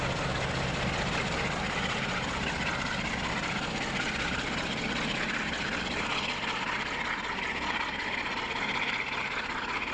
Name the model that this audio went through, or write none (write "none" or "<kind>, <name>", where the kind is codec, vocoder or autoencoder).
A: none